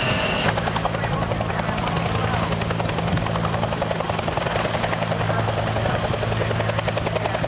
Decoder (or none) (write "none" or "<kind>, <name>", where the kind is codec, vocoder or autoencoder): none